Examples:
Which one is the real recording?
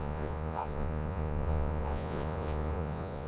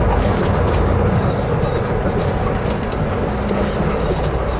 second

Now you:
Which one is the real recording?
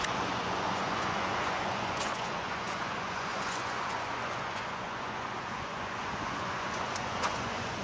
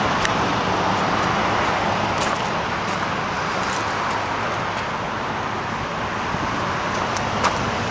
second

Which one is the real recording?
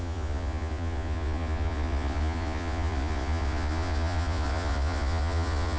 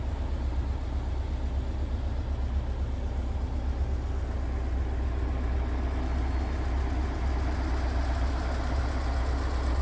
second